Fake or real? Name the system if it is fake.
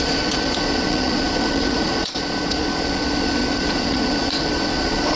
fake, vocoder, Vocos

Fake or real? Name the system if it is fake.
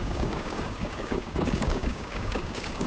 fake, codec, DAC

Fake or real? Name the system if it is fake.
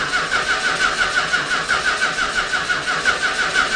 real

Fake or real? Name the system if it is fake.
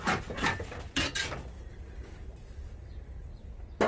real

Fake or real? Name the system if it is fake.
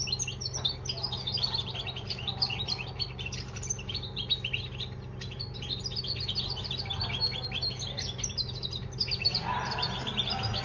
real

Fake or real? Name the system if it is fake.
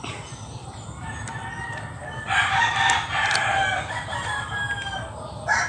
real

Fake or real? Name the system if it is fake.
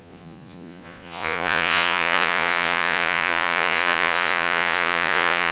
fake, vocoder, Vocos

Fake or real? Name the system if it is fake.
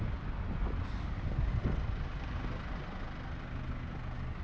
real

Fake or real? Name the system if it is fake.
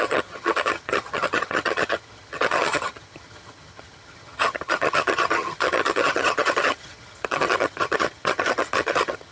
fake, vocoder, HiFi-GAN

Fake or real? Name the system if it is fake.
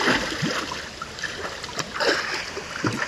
real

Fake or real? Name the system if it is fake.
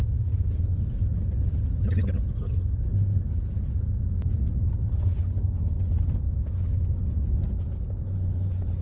real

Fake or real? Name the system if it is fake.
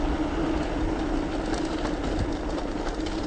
real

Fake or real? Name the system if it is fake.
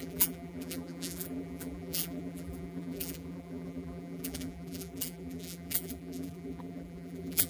fake, vocoder, BigVGAN v2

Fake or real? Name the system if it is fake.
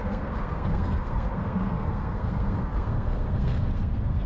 fake, codec, SNAC